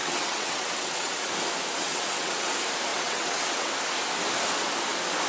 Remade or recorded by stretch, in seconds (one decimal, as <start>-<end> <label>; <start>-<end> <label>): 0.0-1.3 remade; 1.3-1.8 recorded; 1.8-2.5 remade; 2.5-2.9 recorded; 2.9-3.7 remade; 3.7-5.3 recorded